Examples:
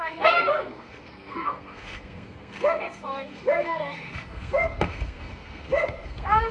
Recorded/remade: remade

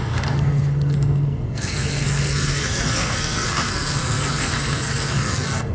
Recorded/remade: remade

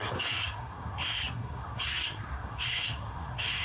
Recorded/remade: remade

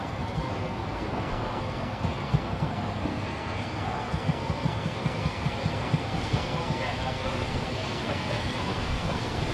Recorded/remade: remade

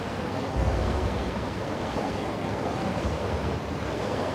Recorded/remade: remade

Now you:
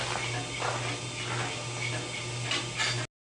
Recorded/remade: recorded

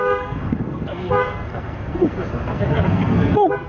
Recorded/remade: remade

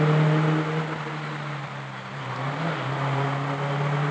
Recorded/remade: recorded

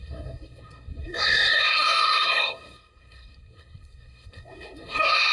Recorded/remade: remade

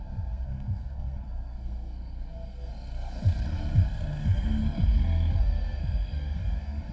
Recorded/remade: remade